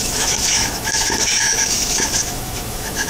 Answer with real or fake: fake